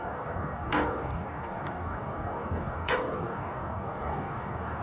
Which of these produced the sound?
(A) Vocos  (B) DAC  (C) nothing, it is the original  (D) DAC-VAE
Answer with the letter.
B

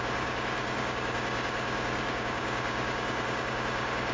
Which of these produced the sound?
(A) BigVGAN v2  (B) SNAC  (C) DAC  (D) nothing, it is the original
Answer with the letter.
C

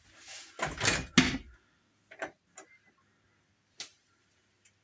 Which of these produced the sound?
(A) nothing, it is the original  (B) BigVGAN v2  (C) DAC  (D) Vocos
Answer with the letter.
A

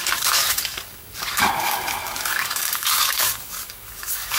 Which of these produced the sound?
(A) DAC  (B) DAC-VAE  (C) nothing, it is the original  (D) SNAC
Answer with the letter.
A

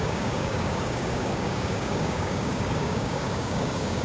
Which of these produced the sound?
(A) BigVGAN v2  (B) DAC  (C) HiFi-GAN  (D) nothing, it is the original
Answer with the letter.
B